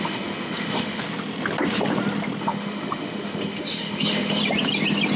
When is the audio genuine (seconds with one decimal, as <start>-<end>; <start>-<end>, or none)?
1.0-2.4; 4.4-5.2